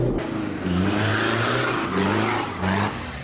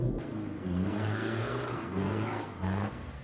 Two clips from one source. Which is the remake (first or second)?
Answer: second